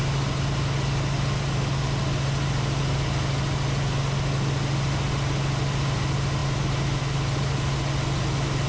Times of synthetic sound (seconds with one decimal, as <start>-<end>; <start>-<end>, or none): none